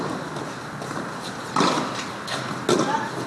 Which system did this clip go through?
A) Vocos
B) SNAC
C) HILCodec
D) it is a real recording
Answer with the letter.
D